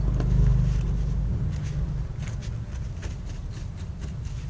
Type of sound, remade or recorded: recorded